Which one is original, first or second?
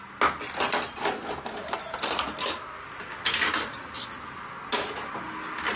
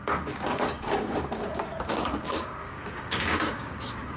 first